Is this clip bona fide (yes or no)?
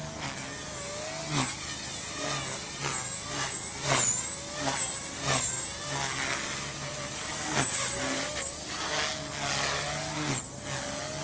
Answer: yes